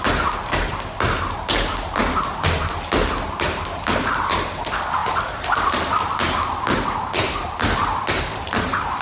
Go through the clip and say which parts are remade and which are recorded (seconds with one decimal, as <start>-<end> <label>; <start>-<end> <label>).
0.0-9.0 recorded